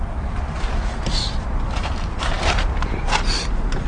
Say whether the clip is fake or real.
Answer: real